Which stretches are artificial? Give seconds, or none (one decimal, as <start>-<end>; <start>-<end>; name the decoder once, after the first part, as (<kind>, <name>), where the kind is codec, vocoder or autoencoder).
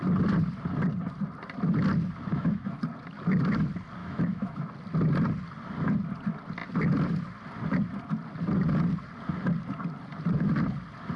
2.3-2.8 (autoencoder, DAC-VAE); 4.0-4.7